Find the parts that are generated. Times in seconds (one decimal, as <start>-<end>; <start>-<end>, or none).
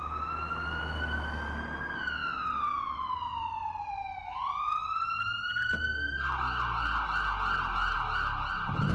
none